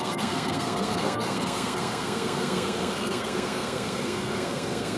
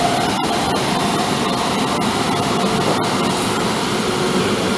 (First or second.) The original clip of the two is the second